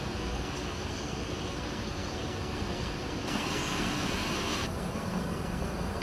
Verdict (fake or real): fake